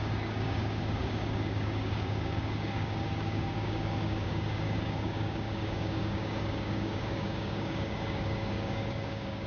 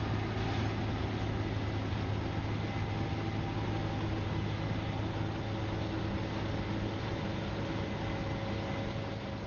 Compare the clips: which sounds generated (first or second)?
first